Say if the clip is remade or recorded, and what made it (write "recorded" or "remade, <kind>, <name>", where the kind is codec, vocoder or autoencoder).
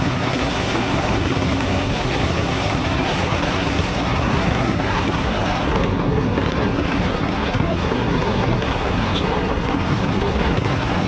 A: remade, codec, SNAC